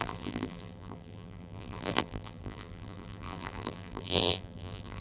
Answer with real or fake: fake